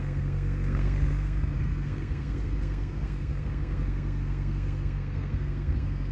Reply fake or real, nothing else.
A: fake